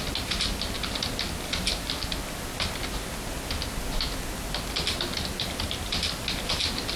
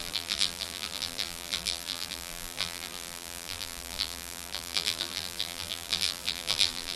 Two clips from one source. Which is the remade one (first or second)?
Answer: second